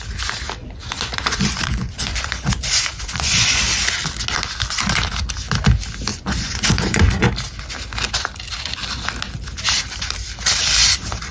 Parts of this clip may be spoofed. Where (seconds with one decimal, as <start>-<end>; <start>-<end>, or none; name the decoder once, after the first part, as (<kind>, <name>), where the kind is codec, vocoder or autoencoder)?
0.6-3.6 (vocoder, Vocos); 6.1-7.3